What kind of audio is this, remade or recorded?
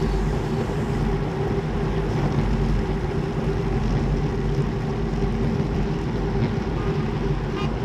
recorded